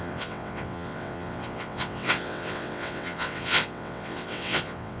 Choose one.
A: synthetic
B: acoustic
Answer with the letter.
A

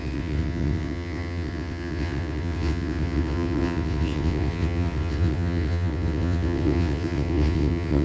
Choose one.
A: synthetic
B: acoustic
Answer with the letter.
A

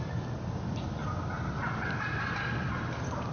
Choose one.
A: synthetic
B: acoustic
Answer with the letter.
B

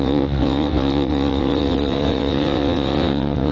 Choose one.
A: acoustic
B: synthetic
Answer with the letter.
B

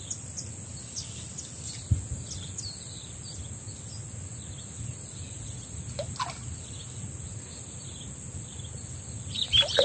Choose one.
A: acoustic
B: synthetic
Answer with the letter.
A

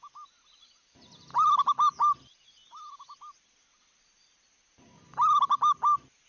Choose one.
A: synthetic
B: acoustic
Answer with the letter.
B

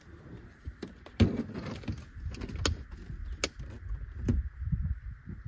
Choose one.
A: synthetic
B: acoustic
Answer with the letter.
B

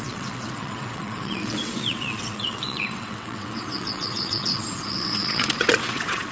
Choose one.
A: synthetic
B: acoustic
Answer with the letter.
A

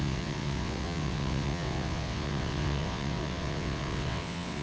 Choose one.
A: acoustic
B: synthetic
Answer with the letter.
B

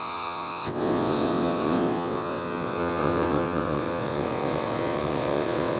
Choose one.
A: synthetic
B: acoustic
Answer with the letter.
A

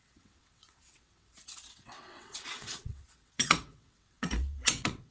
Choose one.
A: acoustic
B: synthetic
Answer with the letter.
B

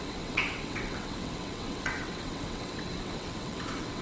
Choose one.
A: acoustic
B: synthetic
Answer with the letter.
B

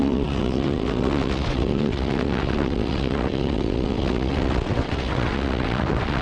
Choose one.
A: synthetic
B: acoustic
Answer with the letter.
A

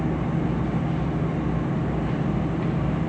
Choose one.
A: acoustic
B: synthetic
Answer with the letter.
A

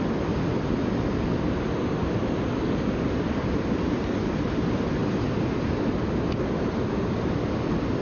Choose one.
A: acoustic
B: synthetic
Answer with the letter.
A